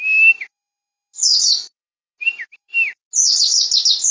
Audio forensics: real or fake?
real